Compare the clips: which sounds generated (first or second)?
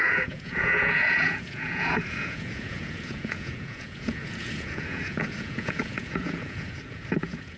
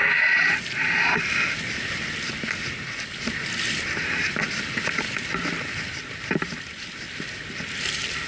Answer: first